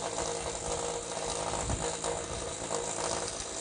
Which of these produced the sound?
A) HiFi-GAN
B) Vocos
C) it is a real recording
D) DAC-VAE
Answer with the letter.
C